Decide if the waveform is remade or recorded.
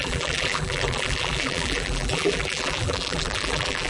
remade